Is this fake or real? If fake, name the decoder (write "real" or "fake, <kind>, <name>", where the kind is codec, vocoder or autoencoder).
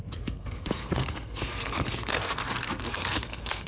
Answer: fake, codec, SNAC